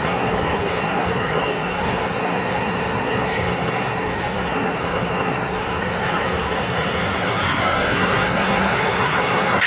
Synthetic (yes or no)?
yes